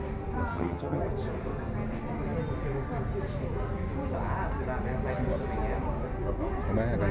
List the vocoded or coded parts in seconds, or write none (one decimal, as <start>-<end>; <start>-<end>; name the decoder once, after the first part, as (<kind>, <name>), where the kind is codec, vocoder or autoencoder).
0.5-1.0 (vocoder, HiFi-GAN)